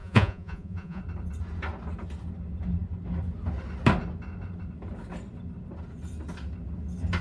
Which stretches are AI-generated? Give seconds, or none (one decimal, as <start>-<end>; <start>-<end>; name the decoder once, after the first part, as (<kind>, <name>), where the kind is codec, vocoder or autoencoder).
0.0-1.0 (vocoder, Vocos)

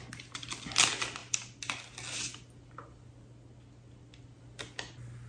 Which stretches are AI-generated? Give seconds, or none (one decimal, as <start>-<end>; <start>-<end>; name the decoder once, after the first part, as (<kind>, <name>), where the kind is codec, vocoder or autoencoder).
none

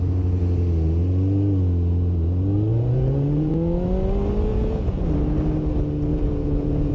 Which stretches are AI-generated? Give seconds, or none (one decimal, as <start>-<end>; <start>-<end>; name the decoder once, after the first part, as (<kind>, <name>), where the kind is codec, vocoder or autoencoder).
2.7-3.5 (vocoder, Vocos); 4.5-5.0; 6.1-6.9

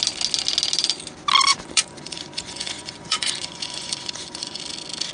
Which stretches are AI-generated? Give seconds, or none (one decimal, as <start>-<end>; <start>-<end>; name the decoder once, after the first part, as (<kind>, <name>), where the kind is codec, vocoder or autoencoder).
1.5-4.6 (vocoder, Vocos)

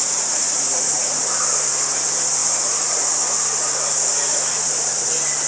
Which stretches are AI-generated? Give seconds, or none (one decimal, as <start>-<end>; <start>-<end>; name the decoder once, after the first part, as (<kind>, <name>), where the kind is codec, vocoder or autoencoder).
0.0-1.4 (vocoder, Vocos); 2.4-3.1; 4.3-5.1

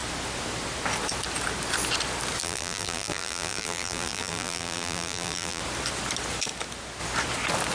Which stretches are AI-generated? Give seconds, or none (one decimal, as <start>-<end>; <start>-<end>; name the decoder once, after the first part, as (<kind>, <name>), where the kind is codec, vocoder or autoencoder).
2.4-5.6 (vocoder, BigVGAN v2)